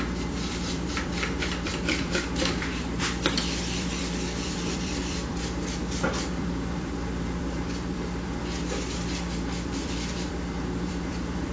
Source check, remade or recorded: remade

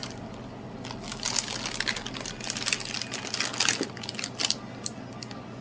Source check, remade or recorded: recorded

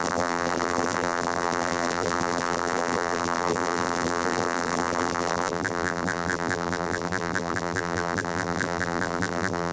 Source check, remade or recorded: remade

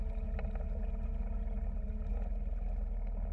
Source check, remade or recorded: recorded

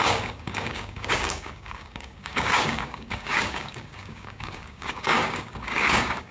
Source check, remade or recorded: remade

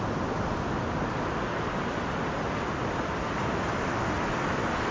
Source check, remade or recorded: recorded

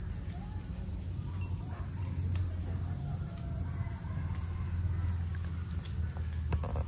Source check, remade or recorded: recorded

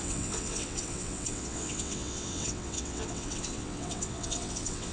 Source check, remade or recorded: remade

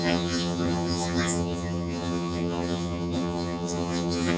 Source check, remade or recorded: remade